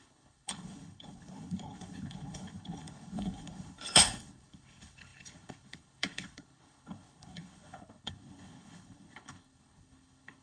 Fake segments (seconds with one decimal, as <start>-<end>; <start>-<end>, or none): 0.0-10.4

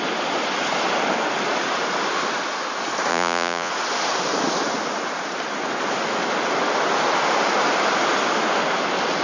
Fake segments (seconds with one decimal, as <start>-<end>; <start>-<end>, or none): 3.1-3.7

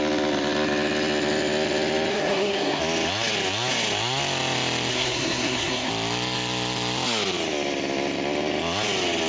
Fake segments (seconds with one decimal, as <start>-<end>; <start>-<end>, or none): 2.1-2.8; 4.9-5.9

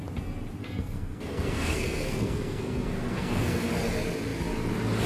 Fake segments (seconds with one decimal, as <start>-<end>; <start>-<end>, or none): 0.6-3.7

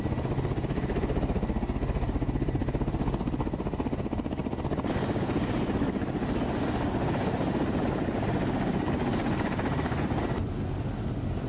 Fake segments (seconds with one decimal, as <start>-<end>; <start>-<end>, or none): none

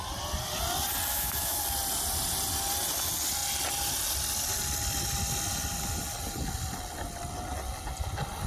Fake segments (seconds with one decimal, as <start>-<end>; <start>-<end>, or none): 1.1-1.6

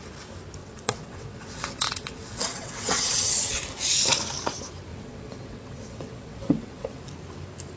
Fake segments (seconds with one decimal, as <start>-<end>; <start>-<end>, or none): 0.6-3.6; 4.9-7.0

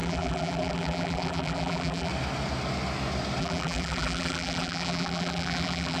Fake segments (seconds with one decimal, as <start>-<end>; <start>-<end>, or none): 0.0-2.1; 3.4-6.0